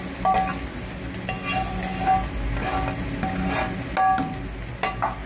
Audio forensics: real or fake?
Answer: real